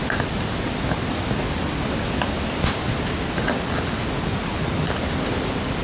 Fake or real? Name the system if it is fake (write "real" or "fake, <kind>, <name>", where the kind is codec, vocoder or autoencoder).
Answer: real